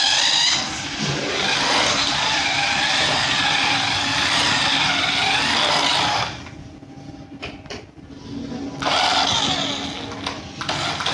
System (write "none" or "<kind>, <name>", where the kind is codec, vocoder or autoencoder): none